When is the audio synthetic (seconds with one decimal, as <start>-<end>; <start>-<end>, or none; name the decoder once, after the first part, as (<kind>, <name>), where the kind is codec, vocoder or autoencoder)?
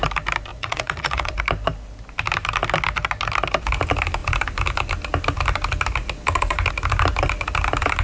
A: 0.5-1.4 (vocoder, Vocos)